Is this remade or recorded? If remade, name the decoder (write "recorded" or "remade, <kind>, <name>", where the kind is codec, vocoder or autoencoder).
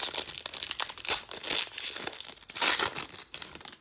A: recorded